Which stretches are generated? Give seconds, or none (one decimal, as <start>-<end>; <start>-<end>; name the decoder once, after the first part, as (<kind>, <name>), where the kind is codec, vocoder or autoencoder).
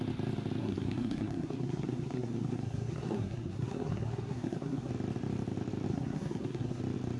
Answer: 0.6-4.9 (codec, SNAC); 5.9-6.8